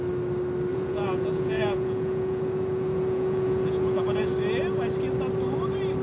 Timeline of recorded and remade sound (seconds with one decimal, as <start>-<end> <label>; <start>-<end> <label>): 0.0-0.7 recorded; 0.7-4.3 remade; 4.3-6.0 recorded